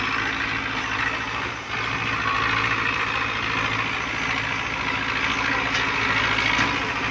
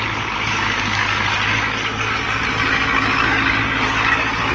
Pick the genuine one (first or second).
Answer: first